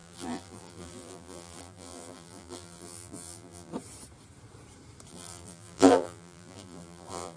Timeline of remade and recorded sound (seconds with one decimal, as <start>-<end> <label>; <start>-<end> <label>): 0.0-3.7 remade; 3.7-5.1 recorded; 5.1-7.4 remade